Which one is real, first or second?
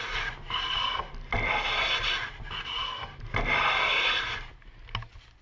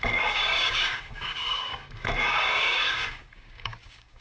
first